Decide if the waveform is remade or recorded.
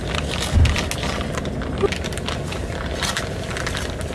recorded